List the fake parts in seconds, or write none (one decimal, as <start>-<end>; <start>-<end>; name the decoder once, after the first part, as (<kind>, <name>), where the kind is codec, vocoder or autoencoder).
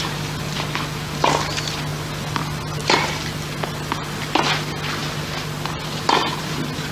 none